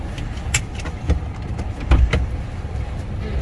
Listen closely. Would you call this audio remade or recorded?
recorded